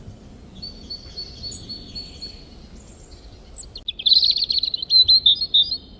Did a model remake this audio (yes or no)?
no